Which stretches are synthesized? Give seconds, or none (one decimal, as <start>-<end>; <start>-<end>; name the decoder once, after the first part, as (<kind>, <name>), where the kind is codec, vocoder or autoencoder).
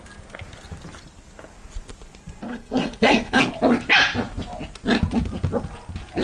2.5-3.4 (codec, SNAC)